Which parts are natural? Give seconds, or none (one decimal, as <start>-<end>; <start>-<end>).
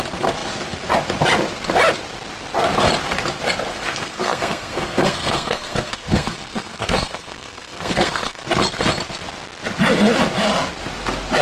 0.0-3.7; 8.4-11.4